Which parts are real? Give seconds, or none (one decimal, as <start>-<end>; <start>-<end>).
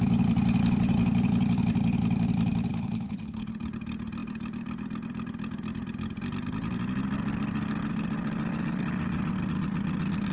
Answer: 0.0-2.7; 3.5-10.3